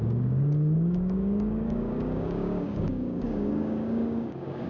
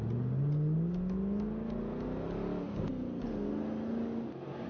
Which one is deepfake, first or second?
first